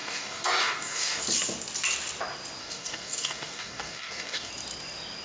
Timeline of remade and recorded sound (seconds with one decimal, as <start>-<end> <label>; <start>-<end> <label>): 0.0-1.2 remade; 1.2-2.6 recorded; 2.6-4.5 remade; 4.5-5.2 recorded